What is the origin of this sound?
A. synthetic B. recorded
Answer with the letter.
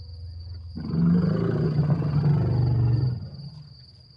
B